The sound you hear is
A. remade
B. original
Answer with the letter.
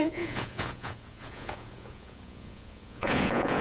A